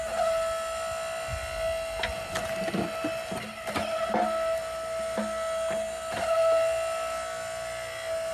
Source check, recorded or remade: recorded